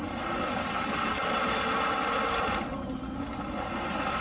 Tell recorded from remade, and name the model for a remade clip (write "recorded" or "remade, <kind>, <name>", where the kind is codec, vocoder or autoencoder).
recorded